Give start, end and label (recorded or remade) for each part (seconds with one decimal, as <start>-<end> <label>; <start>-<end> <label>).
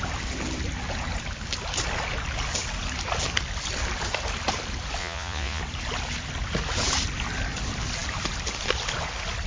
0.0-5.0 recorded; 5.0-5.6 remade; 5.6-9.5 recorded